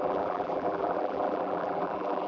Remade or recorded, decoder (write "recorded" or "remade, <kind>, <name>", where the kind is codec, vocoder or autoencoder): remade, vocoder, BigVGAN v2